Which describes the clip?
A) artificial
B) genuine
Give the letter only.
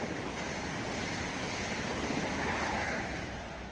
A